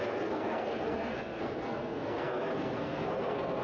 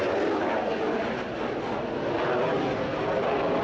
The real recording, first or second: second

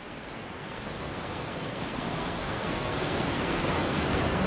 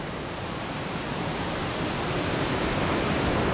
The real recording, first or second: second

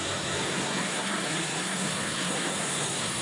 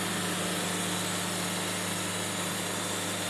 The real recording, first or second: second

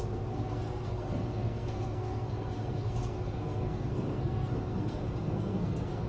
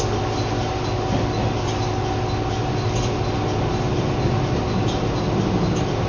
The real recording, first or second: second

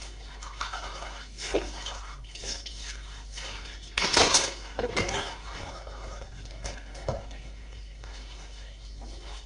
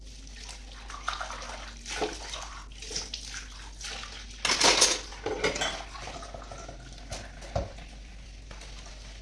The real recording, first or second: second